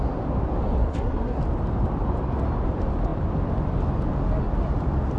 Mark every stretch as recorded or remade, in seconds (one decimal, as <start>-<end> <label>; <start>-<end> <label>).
0.0-0.8 recorded; 0.8-1.4 remade; 1.4-5.2 recorded